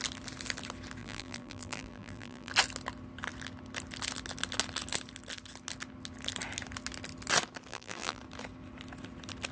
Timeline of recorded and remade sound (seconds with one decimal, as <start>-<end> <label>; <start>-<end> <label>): 0.0-1.0 recorded; 1.0-2.5 remade; 2.5-7.7 recorded; 7.7-8.2 remade; 8.2-9.5 recorded